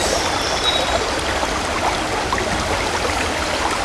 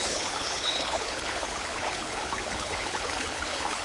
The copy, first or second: second